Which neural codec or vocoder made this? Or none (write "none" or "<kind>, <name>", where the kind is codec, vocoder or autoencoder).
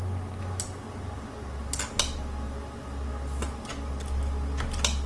none